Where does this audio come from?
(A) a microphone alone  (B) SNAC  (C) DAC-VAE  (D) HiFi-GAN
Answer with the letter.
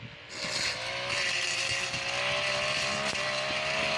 A